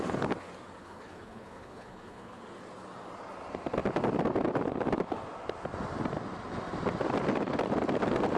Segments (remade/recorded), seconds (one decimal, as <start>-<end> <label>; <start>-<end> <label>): 0.0-0.8 recorded; 0.8-2.4 remade; 2.4-8.4 recorded